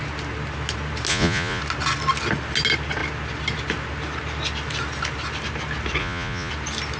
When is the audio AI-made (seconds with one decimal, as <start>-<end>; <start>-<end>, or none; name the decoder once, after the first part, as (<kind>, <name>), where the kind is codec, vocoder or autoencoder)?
1.1-1.6 (vocoder, Vocos); 6.0-6.5